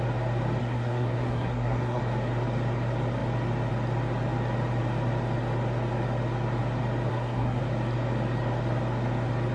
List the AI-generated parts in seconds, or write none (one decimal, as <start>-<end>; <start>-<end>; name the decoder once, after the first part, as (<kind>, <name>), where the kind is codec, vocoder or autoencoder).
0.6-2.0 (codec, SNAC); 7.1-7.6